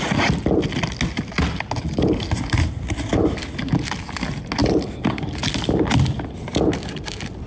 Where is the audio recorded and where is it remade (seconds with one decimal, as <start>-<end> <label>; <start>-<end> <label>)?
0.0-4.6 recorded; 4.6-6.3 remade; 6.3-7.5 recorded